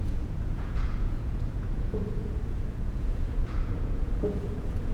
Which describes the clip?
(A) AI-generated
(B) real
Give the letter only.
A